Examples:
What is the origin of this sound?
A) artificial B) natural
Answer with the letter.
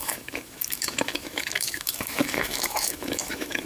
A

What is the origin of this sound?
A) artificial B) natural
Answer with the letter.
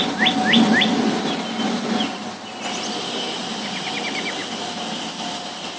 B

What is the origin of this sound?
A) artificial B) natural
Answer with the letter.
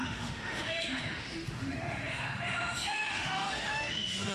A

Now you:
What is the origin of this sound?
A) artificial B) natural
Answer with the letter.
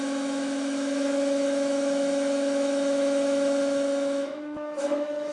A